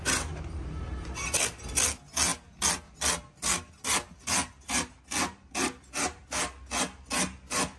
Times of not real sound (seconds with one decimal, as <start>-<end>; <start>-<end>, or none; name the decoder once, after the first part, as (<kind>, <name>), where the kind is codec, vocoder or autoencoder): none